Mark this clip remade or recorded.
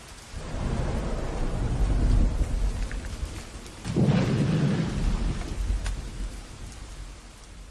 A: recorded